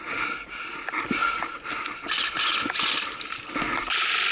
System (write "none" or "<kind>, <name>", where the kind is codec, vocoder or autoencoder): none